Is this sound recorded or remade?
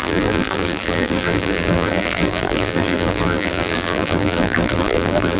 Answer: remade